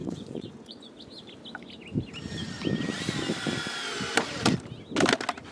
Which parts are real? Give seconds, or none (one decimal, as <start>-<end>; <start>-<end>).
0.9-5.5